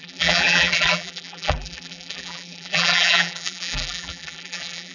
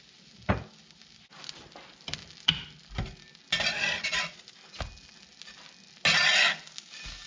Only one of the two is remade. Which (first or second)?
first